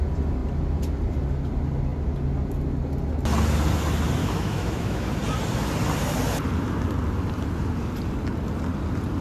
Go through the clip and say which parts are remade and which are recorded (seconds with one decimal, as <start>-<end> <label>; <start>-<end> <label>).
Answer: 0.0-4.2 recorded; 4.2-5.1 remade; 5.1-9.2 recorded